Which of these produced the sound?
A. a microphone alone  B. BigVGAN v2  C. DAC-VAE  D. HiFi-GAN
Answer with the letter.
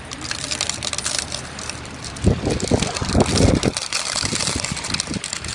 B